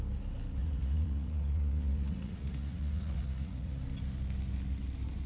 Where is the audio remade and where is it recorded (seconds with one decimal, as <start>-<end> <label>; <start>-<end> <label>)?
0.0-0.6 recorded; 0.6-3.8 remade; 3.8-5.3 recorded